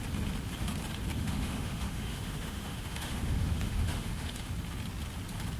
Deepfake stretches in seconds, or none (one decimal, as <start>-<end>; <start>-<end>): 1.1-4.5

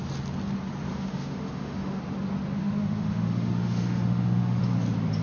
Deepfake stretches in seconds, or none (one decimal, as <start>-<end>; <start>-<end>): 0.9-2.0; 2.6-4.6

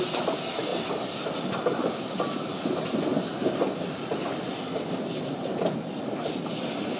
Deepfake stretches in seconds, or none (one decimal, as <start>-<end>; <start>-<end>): none

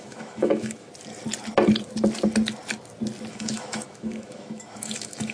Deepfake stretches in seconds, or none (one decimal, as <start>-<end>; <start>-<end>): 0.0-0.9; 3.3-5.3

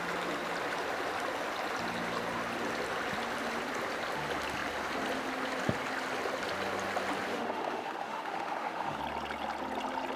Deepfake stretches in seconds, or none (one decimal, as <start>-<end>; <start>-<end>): 7.3-9.0